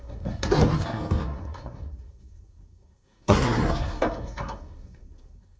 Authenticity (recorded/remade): remade